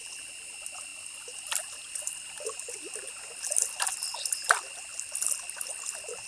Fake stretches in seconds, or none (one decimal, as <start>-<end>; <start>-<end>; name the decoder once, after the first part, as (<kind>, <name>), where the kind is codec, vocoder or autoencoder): none